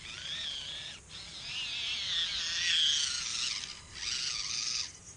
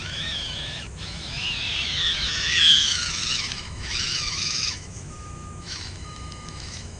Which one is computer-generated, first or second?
second